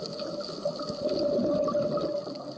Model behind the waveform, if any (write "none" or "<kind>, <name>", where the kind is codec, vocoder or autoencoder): none